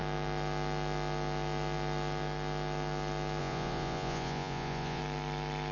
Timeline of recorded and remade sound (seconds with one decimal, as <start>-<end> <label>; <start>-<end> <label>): 0.0-3.4 recorded; 3.4-5.0 remade; 5.0-5.7 recorded